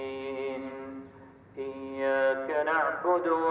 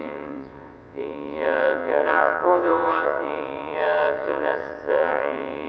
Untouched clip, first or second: first